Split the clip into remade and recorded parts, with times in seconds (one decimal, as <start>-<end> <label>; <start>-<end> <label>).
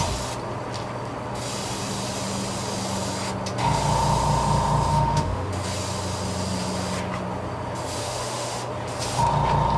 0.0-4.9 recorded; 4.9-5.5 remade; 5.5-8.0 recorded; 8.0-8.7 remade; 8.7-9.8 recorded